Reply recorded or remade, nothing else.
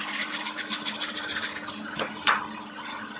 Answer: recorded